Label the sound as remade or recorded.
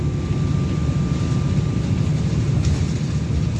recorded